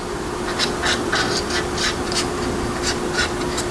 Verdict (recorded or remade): recorded